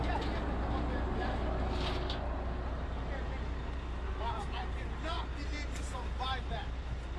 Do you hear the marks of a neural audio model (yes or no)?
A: no